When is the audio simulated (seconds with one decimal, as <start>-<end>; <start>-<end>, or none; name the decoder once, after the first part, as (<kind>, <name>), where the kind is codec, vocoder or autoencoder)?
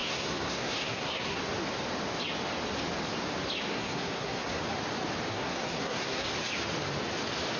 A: 0.0-1.4 (codec, SNAC); 3.7-4.6; 5.3-6.3